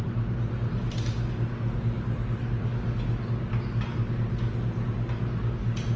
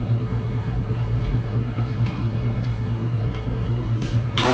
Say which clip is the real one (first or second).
first